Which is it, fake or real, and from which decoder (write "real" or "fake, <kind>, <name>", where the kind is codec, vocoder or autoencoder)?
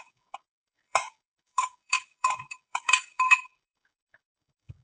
fake, codec, DAC